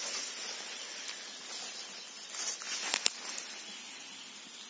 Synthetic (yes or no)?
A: no